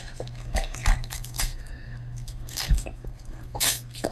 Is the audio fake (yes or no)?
yes